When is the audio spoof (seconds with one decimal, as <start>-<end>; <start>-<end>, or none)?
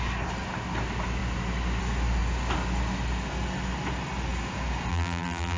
4.9-5.6